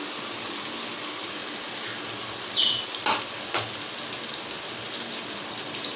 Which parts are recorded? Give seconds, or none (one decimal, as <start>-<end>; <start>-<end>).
0.0-6.0